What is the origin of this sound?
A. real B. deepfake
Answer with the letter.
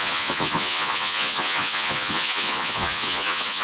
B